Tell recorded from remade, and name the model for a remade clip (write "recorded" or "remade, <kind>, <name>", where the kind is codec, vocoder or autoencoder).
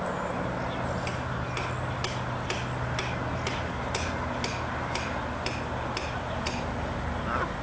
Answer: recorded